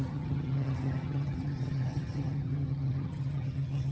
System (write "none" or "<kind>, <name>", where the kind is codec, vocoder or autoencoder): vocoder, HiFi-GAN